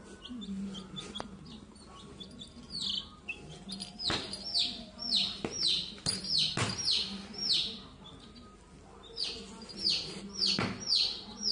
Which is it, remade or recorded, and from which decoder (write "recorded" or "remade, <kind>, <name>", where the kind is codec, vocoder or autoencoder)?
recorded